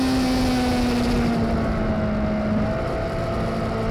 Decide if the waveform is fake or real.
real